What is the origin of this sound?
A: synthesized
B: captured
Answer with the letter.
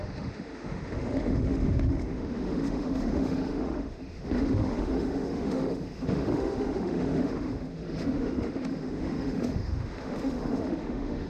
A